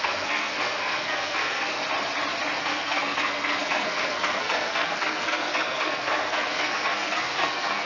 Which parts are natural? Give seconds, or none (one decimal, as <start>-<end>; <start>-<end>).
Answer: 1.8-2.6